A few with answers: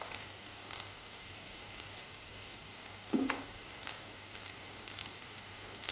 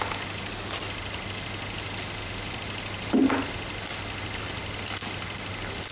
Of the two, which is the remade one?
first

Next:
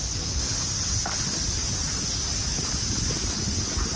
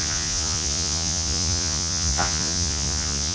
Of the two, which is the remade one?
second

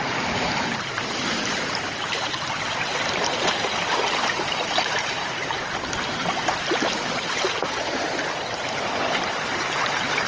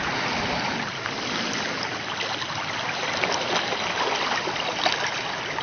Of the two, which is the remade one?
first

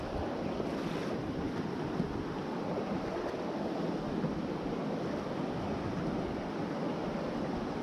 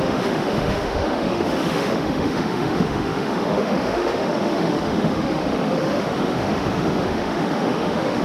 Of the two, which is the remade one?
second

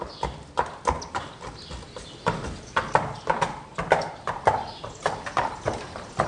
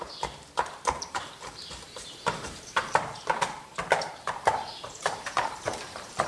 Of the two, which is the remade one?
second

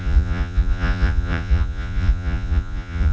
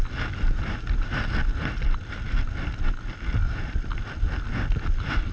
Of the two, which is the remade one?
first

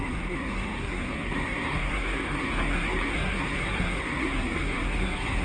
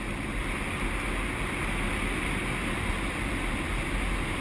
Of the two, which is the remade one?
first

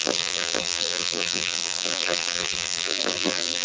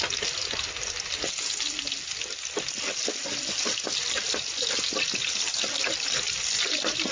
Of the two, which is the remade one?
first